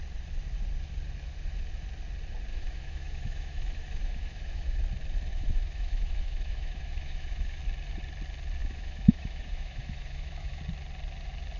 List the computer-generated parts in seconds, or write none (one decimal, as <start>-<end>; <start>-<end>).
2.5-4.8; 5.3-7.6; 8.6-10.6